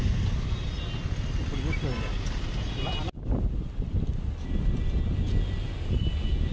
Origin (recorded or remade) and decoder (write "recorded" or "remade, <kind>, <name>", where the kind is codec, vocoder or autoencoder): recorded